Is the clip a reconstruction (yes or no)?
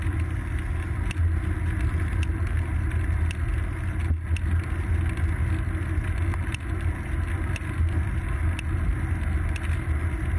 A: no